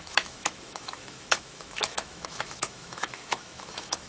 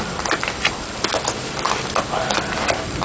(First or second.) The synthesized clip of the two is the first